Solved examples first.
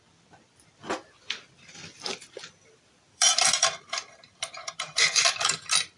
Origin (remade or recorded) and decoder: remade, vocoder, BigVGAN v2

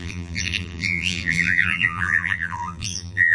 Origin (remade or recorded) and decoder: remade, vocoder, BigVGAN v2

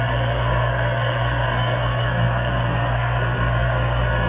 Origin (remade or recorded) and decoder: remade, codec, SNAC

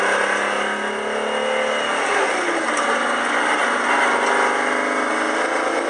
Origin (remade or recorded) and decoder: recorded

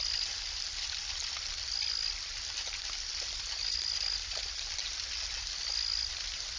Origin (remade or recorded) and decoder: recorded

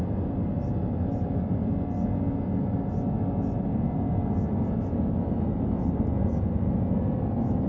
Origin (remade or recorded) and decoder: recorded